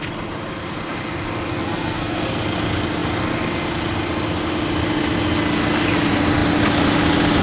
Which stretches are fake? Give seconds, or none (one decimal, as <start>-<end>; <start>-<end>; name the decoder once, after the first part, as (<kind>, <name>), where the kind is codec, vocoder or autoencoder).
1.5-2.4 (codec, SNAC)